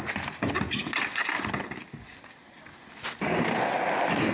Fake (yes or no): no